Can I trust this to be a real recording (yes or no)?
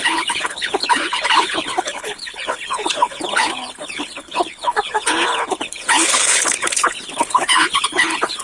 no